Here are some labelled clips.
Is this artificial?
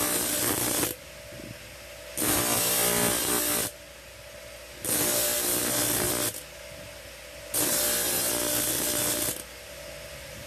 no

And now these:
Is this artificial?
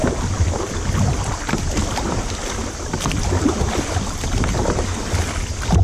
no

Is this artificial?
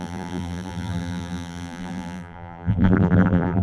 yes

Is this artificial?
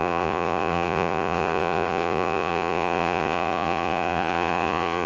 yes